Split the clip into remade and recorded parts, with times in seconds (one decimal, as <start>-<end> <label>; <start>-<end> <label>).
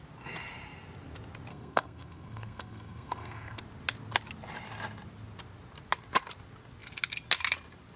0.0-1.5 recorded; 1.5-3.6 remade; 3.6-8.0 recorded